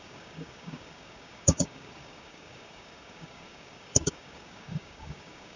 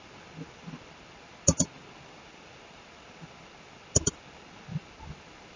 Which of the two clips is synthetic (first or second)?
first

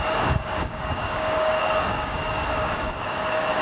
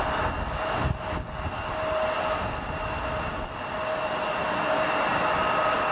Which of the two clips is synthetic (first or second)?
first